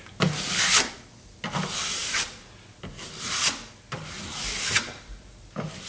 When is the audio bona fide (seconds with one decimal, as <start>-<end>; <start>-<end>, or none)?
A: 0.0-5.9